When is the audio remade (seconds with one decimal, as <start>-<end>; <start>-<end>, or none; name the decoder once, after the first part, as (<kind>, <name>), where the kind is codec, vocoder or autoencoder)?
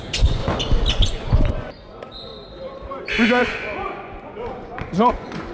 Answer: 0.0-0.4 (vocoder, Vocos); 0.9-2.3; 3.0-5.5